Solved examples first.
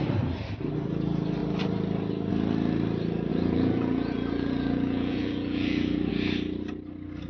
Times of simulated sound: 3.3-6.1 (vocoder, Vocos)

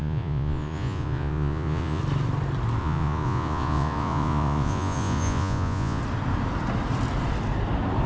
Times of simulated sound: 0.0-2.0 (vocoder, Vocos); 2.8-6.0

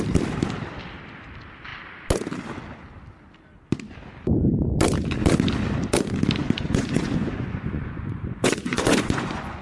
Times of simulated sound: 6.4-9.6 (vocoder, Vocos)